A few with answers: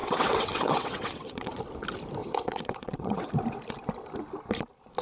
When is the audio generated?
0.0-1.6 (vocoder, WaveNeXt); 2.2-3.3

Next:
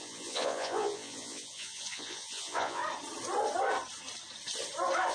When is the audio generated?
0.0-2.8 (vocoder, Vocos)

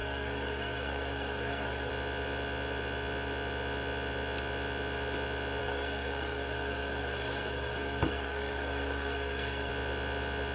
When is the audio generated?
0.0-1.9 (codec, SNAC); 5.6-9.7

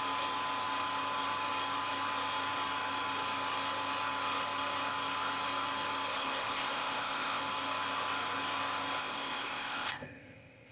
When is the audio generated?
6.1-7.4 (codec, ZipCodec); 9.0-10.7

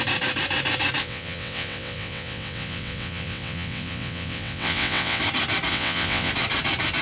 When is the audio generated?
1.0-5.2 (vocoder, WaveNeXt); 5.7-6.3

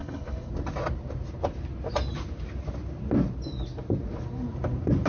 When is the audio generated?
0.0-0.5 (codec, HILCodec)

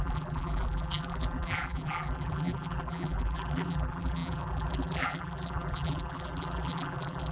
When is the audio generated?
0.0-7.3 (vocoder, BigVGAN v2)

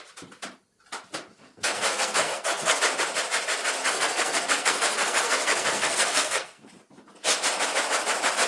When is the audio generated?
1.4-2.8 (codec, SNAC); 3.8-6.7